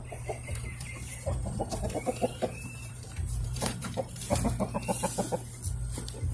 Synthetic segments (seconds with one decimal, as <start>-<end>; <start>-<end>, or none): 0.5-4.2